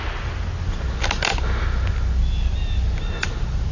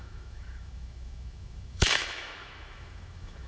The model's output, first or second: second